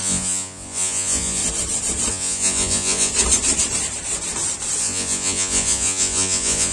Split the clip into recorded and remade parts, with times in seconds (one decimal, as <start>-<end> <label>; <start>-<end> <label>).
0.0-1.4 remade; 1.4-2.1 recorded; 2.1-3.1 remade; 3.1-4.8 recorded; 4.8-6.7 remade